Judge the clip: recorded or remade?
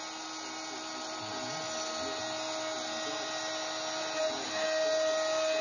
recorded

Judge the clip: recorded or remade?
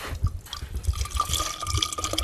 recorded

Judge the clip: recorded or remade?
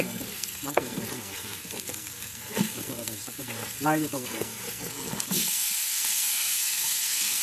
remade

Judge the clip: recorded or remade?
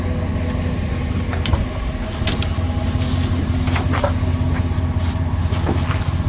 recorded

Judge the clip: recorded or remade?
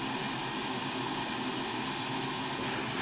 recorded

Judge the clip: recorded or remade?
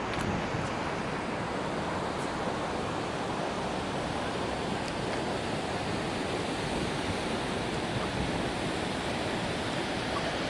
recorded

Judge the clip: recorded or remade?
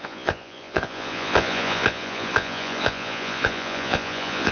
remade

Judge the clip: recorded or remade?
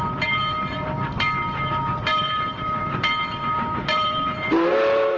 remade